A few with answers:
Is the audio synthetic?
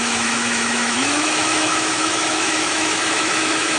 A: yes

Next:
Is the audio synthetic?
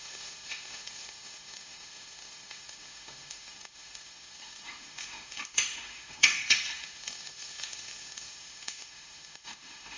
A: yes